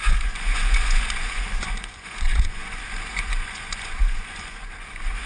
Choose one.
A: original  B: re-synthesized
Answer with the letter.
B